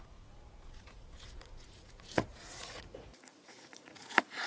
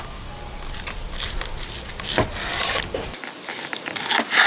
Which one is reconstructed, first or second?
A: first